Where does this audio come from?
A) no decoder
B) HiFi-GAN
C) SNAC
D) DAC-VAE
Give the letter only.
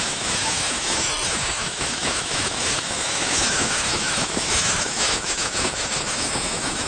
D